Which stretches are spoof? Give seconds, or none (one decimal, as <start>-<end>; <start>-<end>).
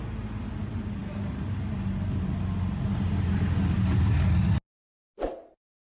none